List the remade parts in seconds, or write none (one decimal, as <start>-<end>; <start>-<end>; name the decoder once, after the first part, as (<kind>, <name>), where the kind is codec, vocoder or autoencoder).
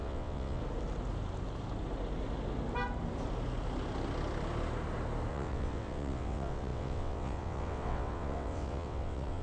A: 0.0-0.6 (vocoder, WaveNeXt); 5.3-9.4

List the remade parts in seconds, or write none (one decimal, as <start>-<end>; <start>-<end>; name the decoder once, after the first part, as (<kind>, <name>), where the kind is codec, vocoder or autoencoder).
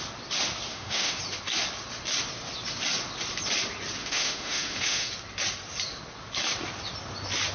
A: 0.7-1.2 (autoencoder, DAC-VAE); 4.0-5.1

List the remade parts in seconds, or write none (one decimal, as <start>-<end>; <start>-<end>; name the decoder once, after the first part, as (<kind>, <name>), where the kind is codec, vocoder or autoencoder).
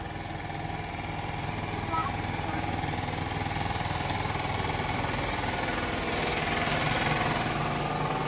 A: none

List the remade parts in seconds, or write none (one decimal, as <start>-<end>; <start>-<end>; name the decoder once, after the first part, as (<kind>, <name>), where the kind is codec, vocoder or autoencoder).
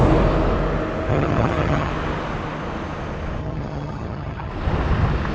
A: 1.1-1.9 (vocoder, HiFi-GAN); 3.4-4.5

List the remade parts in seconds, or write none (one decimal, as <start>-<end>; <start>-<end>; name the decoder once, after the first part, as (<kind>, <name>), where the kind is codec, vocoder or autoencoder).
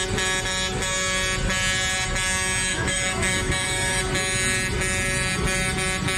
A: 2.7-4.0 (autoencoder, DAC-VAE)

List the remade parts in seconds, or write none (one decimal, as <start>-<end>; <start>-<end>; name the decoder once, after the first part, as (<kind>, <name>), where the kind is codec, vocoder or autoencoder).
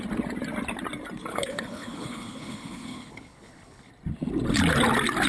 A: 1.3-3.9 (codec, HILCodec)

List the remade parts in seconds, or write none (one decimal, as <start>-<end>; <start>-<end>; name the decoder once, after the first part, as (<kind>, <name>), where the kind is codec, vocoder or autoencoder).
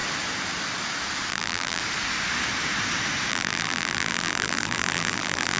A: 1.3-1.8 (vocoder, BigVGAN v2); 3.3-5.6